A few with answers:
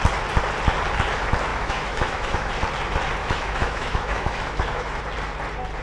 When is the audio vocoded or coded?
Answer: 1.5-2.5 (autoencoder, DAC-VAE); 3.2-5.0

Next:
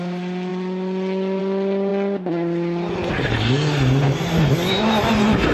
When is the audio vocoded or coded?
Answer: none

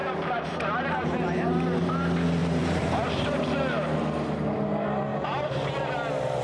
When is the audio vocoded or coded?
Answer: 0.0-1.9 (vocoder, BigVGAN v2); 2.4-3.5; 5.1-5.7